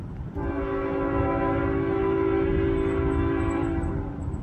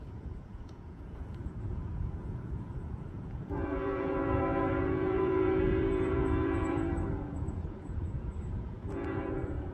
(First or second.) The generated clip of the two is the second